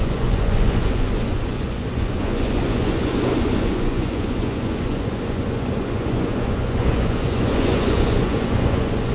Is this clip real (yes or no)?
no